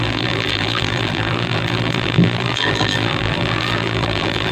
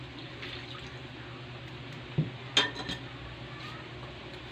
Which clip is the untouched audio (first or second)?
second